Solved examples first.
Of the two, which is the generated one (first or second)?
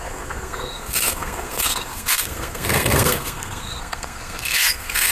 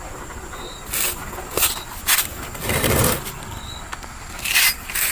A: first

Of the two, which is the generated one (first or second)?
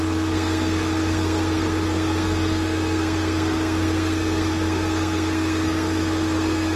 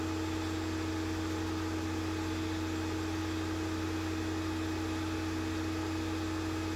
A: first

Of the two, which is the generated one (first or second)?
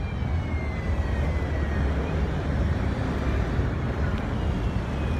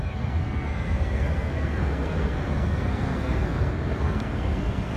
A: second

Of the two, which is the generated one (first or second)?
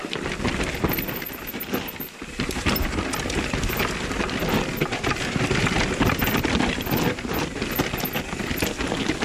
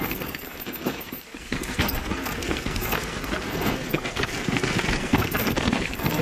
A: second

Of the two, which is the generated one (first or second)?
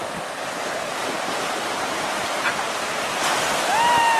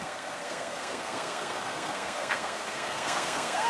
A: second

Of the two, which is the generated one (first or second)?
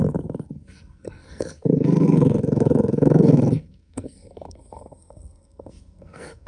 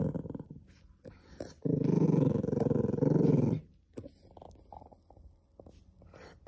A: first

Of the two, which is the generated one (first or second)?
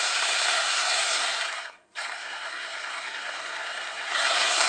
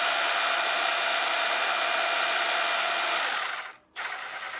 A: first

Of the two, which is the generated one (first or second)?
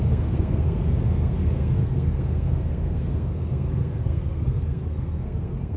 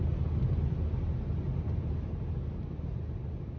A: first